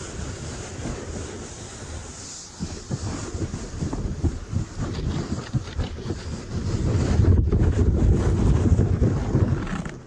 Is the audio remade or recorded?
recorded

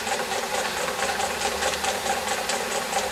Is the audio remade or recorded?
remade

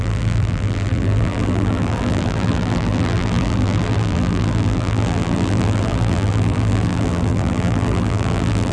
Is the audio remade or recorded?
remade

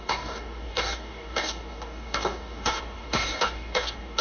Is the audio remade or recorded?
remade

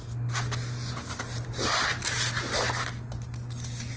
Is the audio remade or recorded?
recorded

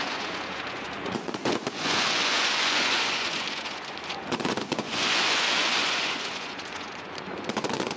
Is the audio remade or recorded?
remade